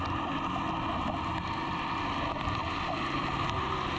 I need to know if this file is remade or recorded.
recorded